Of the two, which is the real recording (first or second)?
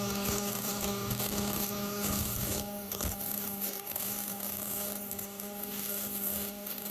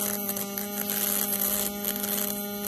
second